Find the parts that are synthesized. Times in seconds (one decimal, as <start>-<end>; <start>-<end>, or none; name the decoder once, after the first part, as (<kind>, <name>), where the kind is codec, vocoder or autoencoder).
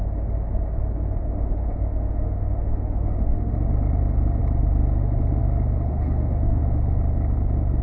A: 1.2-3.5 (autoencoder, DAC-VAE); 5.9-6.6